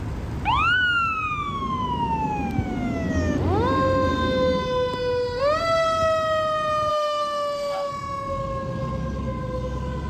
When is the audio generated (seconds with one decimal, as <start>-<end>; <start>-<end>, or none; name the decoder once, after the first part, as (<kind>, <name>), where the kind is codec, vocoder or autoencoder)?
6.9-7.9 (autoencoder, DAC-VAE)